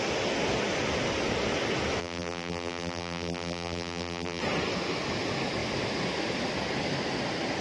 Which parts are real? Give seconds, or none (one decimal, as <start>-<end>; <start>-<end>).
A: 0.0-2.0; 4.4-7.6

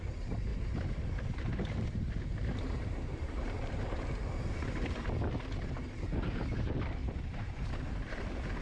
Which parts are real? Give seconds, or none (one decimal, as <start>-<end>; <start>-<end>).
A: 0.0-0.5; 4.0-7.0; 7.7-8.6

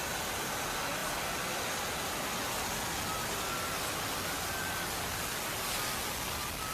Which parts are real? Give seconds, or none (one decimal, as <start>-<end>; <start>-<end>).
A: 0.0-6.7

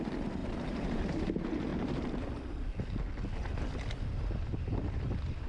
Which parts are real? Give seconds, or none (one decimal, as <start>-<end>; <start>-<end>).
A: 0.0-0.4; 1.0-5.5

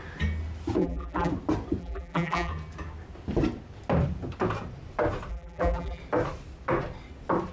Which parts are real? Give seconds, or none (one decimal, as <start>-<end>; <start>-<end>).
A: 0.0-0.8; 1.3-1.8; 2.5-5.3; 6.0-7.5

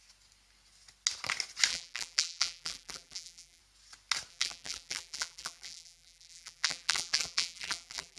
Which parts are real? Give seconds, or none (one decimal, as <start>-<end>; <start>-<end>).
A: 0.0-1.7; 3.6-4.3

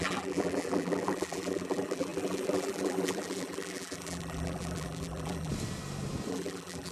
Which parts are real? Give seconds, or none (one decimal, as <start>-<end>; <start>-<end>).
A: 5.5-6.3